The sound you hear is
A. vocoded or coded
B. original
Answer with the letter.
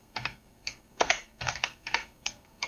A